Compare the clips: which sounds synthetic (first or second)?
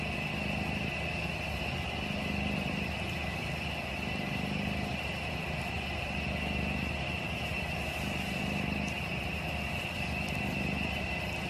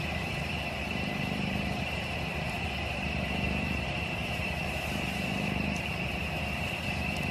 second